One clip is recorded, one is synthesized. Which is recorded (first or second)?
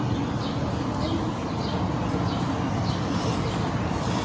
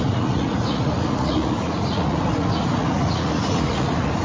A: first